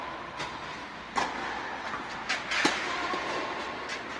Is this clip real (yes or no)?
yes